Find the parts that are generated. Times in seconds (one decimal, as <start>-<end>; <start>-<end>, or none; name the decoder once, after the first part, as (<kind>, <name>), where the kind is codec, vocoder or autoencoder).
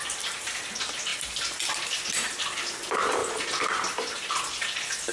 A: none